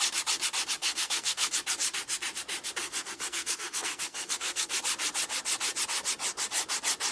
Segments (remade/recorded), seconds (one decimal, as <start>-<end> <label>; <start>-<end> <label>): 0.0-0.8 recorded; 0.8-1.5 remade; 1.5-2.8 recorded; 2.8-4.7 remade; 4.7-7.1 recorded